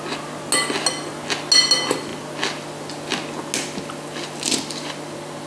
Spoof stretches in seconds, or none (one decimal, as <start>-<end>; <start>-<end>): none